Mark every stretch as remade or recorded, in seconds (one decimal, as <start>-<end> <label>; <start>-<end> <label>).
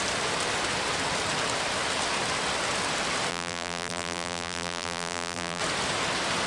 0.0-3.3 recorded; 3.3-5.6 remade; 5.6-6.5 recorded